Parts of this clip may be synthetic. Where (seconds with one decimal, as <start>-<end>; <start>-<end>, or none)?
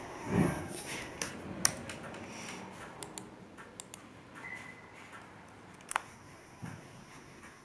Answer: 0.0-1.3; 5.9-7.6